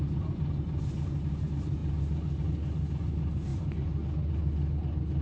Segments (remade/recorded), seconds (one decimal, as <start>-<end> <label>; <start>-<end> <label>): 0.0-5.2 recorded